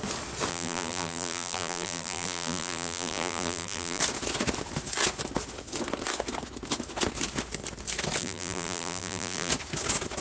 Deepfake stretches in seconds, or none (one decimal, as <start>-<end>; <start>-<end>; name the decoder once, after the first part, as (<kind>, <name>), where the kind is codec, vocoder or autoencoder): 0.5-4.0 (vocoder, BigVGAN v2); 8.2-9.5